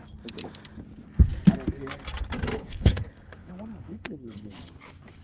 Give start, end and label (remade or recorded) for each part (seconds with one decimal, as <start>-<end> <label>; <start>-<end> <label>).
0.0-2.5 recorded; 2.5-3.5 remade; 3.5-3.9 recorded; 3.9-4.5 remade; 4.5-5.2 recorded